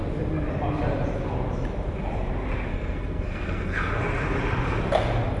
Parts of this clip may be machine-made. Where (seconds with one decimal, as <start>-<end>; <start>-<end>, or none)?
2.7-3.9